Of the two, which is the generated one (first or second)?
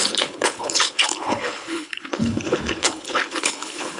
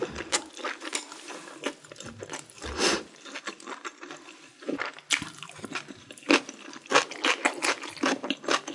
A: first